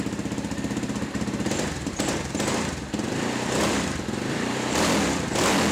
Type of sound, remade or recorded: remade